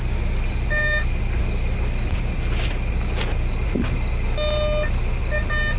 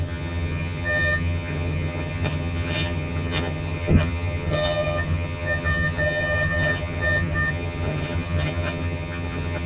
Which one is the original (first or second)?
first